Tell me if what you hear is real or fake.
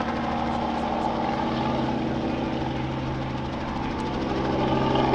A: real